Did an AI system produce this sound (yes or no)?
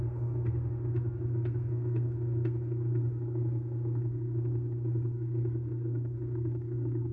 yes